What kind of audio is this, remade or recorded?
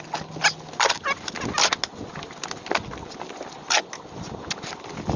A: recorded